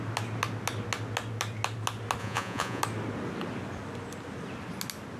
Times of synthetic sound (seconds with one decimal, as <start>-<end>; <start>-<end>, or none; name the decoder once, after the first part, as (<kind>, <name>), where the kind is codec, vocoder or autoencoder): 2.2-2.8 (vocoder, Vocos)